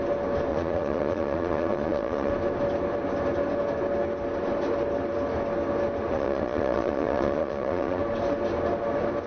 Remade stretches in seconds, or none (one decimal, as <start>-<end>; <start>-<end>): 0.5-2.3; 6.1-8.0